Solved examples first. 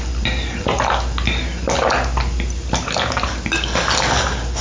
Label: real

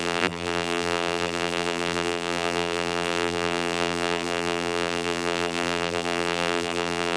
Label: fake